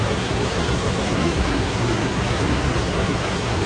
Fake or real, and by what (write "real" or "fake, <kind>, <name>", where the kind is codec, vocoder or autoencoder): fake, codec, SNAC